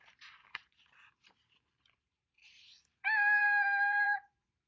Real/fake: fake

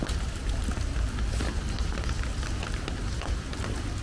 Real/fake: real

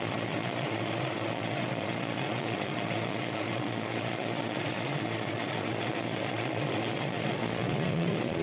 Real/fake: fake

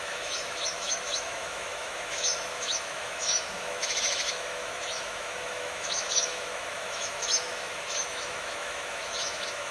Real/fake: fake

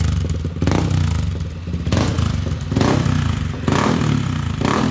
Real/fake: real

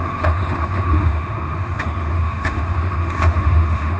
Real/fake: fake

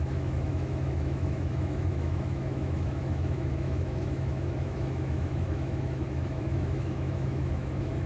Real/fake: fake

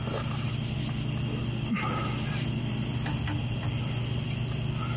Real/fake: real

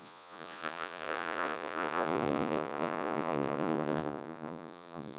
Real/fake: fake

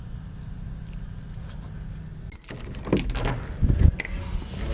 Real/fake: real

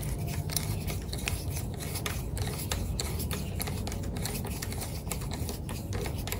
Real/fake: real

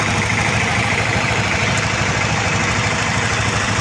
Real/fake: real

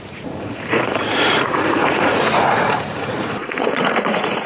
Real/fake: fake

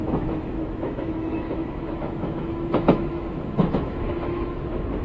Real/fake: fake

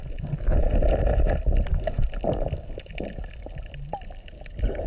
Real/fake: real